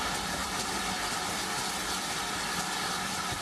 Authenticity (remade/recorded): recorded